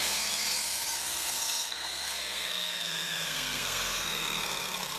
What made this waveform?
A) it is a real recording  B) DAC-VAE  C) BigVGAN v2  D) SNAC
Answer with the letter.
D